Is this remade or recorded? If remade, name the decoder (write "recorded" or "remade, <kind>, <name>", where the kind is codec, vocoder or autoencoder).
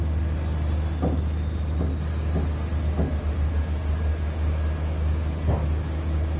recorded